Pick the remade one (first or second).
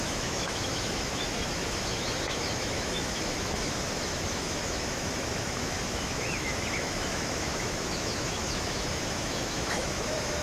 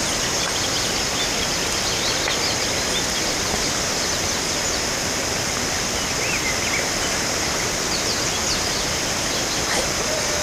first